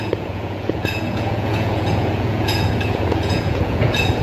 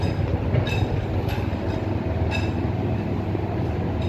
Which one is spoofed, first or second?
first